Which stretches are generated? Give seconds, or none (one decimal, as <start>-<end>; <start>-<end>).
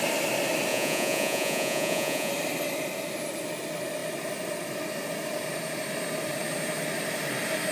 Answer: 0.7-2.3